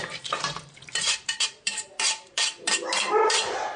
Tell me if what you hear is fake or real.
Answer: fake